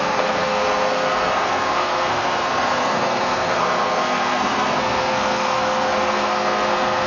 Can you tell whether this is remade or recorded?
remade